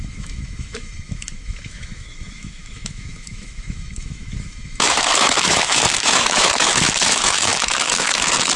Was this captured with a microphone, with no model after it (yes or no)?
no